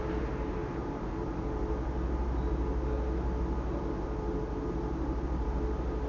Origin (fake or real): real